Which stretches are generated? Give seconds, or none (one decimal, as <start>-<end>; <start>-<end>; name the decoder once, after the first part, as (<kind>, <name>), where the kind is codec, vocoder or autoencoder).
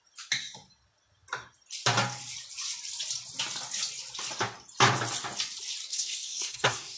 5.9-7.0 (codec, SNAC)